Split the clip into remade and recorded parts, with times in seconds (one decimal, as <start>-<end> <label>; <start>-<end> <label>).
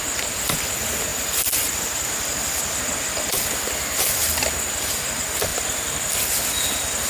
0.0-7.1 recorded